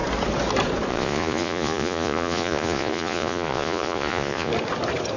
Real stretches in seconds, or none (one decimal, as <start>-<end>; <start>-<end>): 0.0-0.9; 4.5-5.2